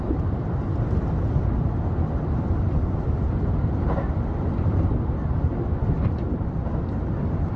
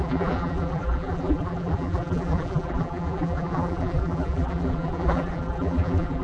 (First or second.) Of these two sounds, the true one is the first